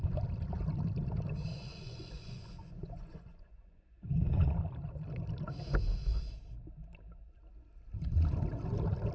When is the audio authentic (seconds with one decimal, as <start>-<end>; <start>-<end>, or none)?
0.0-1.5; 4.5-9.1